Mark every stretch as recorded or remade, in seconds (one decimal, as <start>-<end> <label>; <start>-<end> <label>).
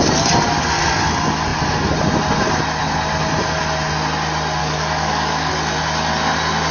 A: 0.0-4.6 recorded; 4.6-5.5 remade; 5.5-6.7 recorded